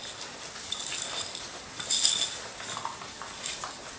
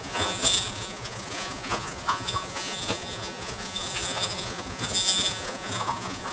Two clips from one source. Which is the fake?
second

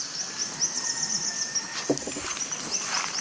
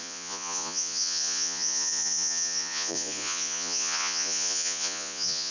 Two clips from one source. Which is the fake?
second